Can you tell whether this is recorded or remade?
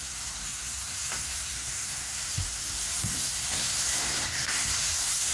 remade